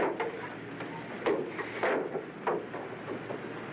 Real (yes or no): yes